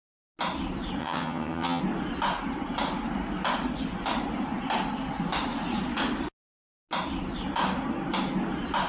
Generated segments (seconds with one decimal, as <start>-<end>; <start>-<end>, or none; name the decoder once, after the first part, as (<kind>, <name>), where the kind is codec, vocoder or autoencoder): 1.0-1.8 (vocoder, HiFi-GAN)